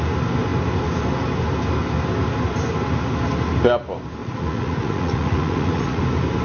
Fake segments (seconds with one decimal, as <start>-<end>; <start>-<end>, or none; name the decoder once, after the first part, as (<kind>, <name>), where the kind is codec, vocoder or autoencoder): 4.2-6.0 (vocoder, Vocos)